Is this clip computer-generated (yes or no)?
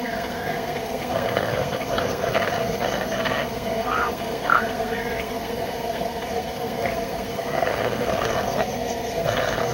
yes